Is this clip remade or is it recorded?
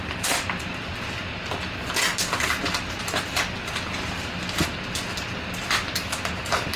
recorded